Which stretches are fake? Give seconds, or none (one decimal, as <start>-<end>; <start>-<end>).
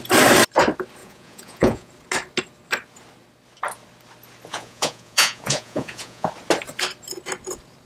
1.0-1.9; 4.5-6.3